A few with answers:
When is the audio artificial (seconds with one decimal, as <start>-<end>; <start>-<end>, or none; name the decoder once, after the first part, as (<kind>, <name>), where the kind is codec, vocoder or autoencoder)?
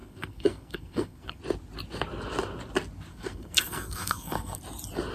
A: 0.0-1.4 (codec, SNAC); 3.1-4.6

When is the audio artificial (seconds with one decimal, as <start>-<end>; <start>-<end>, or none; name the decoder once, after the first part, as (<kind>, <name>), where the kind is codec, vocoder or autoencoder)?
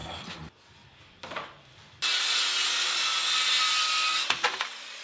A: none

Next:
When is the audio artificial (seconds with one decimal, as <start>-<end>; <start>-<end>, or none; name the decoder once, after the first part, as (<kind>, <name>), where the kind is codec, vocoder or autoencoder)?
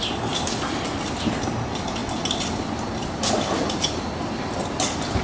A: none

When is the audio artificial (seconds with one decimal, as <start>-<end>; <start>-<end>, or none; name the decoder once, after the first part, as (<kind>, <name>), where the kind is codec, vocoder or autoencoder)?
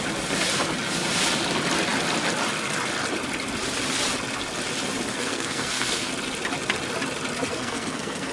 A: 5.1-6.1 (codec, SNAC); 7.5-8.3